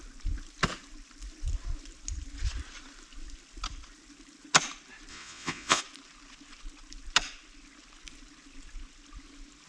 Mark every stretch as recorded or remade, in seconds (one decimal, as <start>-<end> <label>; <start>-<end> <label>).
0.0-5.1 recorded; 5.1-5.8 remade; 5.8-9.7 recorded